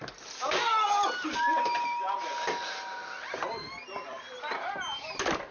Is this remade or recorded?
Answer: recorded